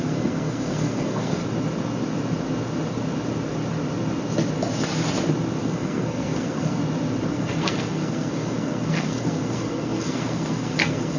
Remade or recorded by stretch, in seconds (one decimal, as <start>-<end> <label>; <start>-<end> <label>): 0.0-1.4 remade; 1.4-5.6 recorded; 5.6-6.8 remade; 6.8-7.3 recorded; 7.3-11.2 remade